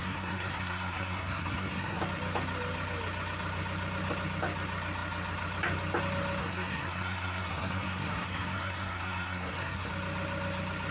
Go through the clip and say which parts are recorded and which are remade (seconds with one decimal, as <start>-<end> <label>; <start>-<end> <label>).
0.0-2.0 remade; 2.0-6.4 recorded; 6.4-9.9 remade; 9.9-10.9 recorded